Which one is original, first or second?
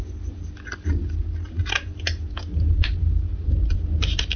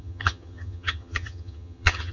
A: first